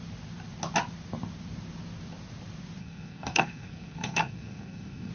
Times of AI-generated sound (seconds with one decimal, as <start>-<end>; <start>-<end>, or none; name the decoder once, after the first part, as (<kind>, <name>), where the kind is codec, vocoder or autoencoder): 2.8-5.1 (codec, SNAC)